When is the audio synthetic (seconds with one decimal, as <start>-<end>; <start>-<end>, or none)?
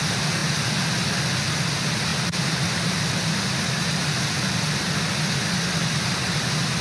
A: 2.1-5.3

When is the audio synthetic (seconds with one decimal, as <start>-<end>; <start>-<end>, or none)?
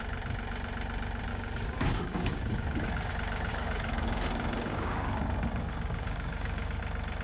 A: 1.3-3.1; 3.5-6.8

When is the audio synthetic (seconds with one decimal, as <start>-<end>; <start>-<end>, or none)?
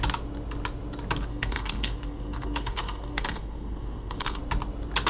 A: 1.3-4.4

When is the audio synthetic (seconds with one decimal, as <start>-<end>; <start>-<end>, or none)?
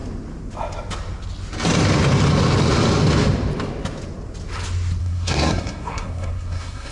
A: 5.0-6.9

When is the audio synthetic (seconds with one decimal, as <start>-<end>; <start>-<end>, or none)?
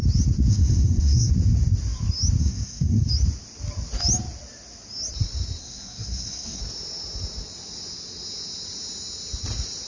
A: 0.5-1.3; 2.4-3.1; 5.6-6.6